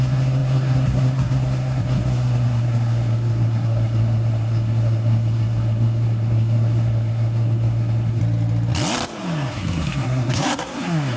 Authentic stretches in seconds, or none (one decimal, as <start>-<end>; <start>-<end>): 8.2-9.5